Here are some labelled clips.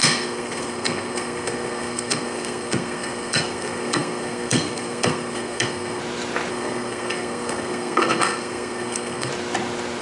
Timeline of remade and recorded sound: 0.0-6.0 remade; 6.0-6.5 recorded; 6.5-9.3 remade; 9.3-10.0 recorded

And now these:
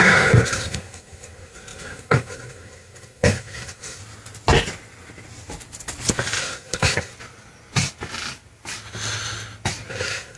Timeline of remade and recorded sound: 0.0-4.0 remade; 4.0-6.4 recorded; 6.4-7.1 remade; 7.1-9.9 recorded; 9.9-10.4 remade

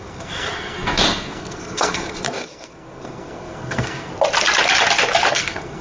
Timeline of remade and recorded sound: 0.0-4.1 remade; 4.1-5.3 recorded; 5.3-5.8 remade

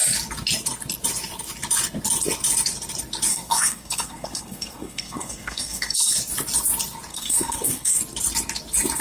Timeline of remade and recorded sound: 0.0-3.3 recorded; 3.3-6.1 remade; 6.1-7.1 recorded; 7.1-8.0 remade; 8.0-9.0 recorded

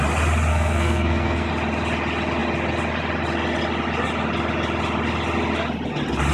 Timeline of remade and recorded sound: 0.0-0.5 recorded; 0.5-1.5 remade; 1.5-6.3 recorded